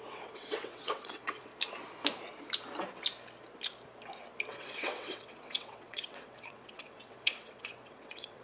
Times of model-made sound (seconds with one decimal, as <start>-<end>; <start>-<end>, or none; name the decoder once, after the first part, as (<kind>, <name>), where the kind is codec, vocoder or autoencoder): 0.0-1.5 (vocoder, WaveNeXt); 4.5-8.4